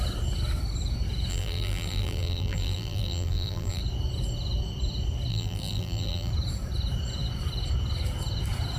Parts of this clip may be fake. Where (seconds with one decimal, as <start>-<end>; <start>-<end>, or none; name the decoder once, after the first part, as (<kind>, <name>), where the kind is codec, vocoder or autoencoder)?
1.3-3.8 (vocoder, BigVGAN v2); 5.3-6.3